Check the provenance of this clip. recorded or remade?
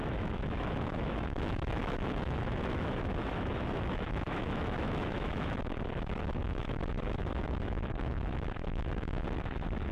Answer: remade